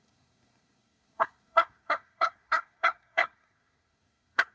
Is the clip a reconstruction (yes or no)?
yes